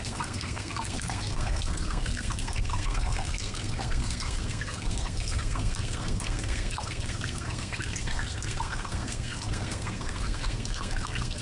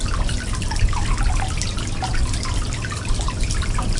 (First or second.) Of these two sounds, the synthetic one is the first